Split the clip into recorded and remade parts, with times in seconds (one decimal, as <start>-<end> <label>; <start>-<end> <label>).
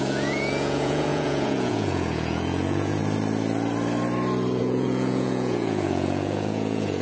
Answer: 0.0-3.0 remade; 3.0-4.6 recorded; 4.6-7.0 remade